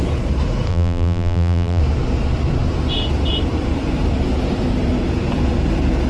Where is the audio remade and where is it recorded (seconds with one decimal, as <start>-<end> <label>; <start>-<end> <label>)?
0.0-0.7 recorded; 0.7-1.8 remade; 1.8-6.1 recorded